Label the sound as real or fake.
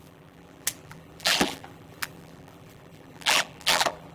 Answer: fake